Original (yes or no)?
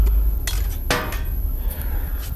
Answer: yes